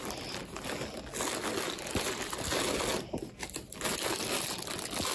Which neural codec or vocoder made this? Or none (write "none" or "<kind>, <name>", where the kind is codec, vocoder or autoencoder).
none